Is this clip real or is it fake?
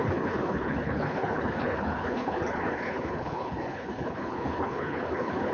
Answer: fake